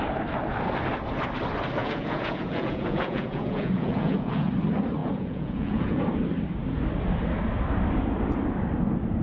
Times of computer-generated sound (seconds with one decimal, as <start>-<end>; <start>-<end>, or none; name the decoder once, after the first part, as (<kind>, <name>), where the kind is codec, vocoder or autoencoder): 1.8-4.5 (vocoder, Vocos); 5.0-6.0

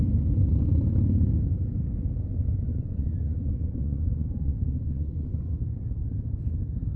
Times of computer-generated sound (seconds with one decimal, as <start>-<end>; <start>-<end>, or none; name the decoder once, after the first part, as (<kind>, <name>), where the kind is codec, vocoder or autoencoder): 2.7-5.5 (vocoder, Vocos)

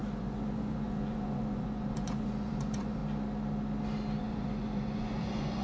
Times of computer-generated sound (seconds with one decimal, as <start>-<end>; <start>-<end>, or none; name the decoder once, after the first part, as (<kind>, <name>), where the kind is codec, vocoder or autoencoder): 0.0-3.0 (vocoder, Vocos); 4.2-5.6

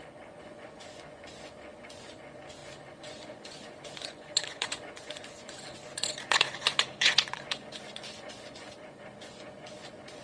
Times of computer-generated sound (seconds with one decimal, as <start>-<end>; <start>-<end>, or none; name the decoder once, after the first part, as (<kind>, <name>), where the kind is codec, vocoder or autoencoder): 0.0-10.2 (vocoder, Vocos)

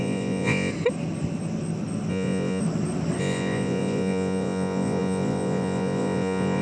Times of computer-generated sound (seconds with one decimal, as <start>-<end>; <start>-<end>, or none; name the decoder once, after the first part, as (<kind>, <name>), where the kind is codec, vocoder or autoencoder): 0.0-0.7 (vocoder, Vocos); 2.1-2.6; 3.2-6.6

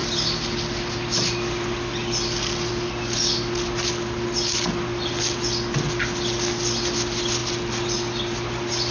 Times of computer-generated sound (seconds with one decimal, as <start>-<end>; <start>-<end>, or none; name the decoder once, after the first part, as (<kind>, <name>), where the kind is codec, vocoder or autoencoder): none

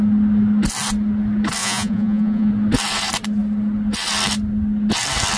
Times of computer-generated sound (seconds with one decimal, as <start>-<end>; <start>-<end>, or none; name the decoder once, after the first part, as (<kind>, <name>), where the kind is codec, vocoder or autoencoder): 1.6-2.5 (vocoder, Vocos)